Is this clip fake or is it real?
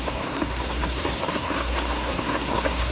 fake